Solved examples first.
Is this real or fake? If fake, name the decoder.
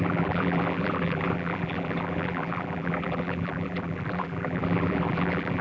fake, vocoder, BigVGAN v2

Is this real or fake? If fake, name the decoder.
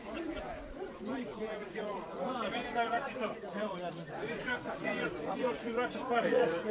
fake, vocoder, Vocos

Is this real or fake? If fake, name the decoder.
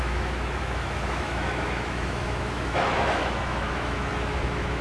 fake, autoencoder, DAC-VAE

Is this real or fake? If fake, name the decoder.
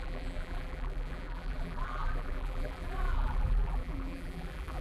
fake, vocoder, BigVGAN v2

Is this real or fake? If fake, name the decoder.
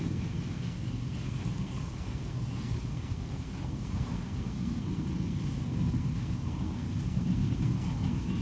fake, codec, SNAC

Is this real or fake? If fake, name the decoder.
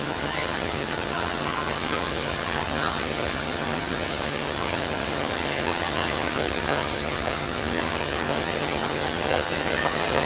fake, vocoder, HiFi-GAN